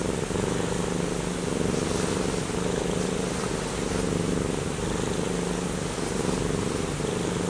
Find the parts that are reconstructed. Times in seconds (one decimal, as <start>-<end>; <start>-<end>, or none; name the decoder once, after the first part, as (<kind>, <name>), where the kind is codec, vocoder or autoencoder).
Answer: none